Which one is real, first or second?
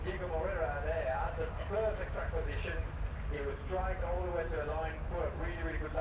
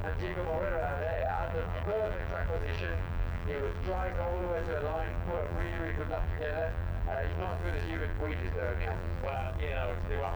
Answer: first